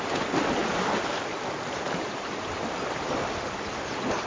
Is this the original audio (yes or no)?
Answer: yes